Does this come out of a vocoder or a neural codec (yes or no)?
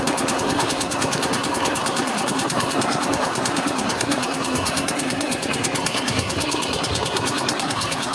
yes